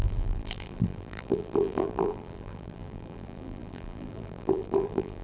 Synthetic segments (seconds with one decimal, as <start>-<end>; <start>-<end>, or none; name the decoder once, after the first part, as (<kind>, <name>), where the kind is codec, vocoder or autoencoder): 0.0-5.2 (vocoder, BigVGAN v2)